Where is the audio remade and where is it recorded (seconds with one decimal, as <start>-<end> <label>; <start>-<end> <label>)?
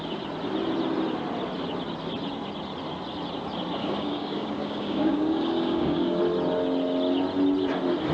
0.0-3.8 recorded; 3.8-6.2 remade; 6.2-8.1 recorded